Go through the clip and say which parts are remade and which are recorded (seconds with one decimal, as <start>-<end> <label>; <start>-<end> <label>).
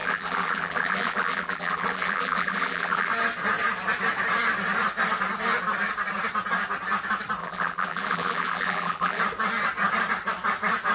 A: 0.0-3.1 remade; 3.1-7.4 recorded; 7.4-9.2 remade; 9.2-10.9 recorded